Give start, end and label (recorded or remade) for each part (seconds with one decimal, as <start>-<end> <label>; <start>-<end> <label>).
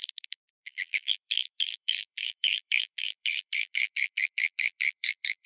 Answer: 0.0-5.5 remade